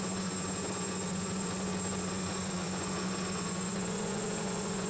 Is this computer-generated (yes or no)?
yes